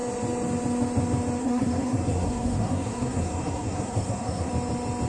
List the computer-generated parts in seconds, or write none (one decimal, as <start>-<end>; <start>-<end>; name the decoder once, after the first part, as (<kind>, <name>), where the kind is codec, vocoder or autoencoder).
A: 1.4-4.5 (codec, SNAC)